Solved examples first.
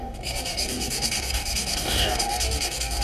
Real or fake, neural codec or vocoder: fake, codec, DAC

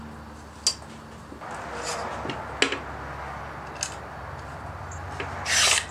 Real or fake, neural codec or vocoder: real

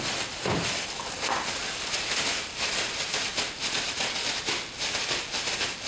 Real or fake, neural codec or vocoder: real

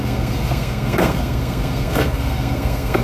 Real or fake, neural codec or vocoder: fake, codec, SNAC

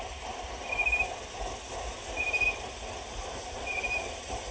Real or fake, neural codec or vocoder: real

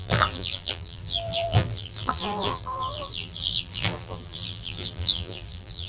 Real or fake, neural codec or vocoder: fake, vocoder, BigVGAN v2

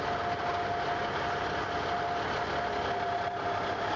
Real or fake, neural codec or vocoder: real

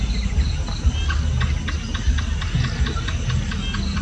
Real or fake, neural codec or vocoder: real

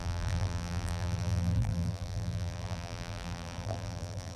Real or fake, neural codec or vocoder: fake, vocoder, BigVGAN v2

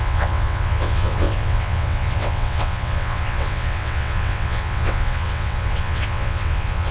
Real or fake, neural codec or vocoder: fake, vocoder, WaveNeXt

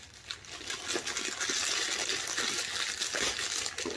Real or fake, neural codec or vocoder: real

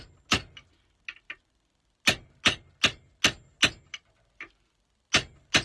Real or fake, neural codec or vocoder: real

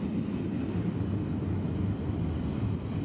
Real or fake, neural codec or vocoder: real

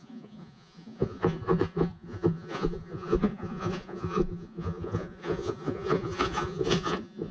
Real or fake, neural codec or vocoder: fake, vocoder, Vocos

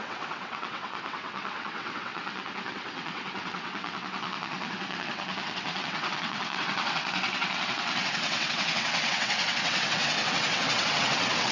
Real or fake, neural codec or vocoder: fake, vocoder, WaveNeXt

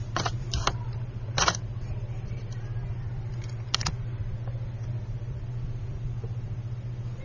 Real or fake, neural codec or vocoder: fake, vocoder, BigVGAN v2